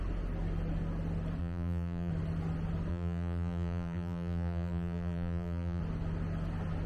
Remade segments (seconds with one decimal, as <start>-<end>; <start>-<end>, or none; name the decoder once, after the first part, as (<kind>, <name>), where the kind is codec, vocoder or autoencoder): 1.4-2.1 (vocoder, BigVGAN v2); 2.9-5.8